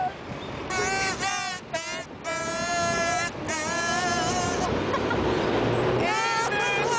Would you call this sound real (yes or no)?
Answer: yes